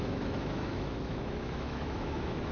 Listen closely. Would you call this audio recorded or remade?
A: remade